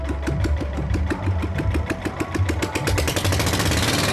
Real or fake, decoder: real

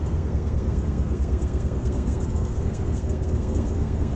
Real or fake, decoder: fake, codec, SNAC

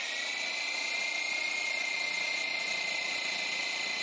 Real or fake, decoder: real